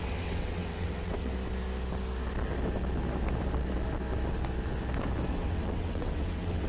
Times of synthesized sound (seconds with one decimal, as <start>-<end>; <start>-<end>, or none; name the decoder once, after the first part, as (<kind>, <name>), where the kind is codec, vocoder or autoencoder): 0.0-1.3 (vocoder, WaveNeXt); 5.3-6.7